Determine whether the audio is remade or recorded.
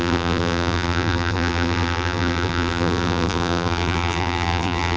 remade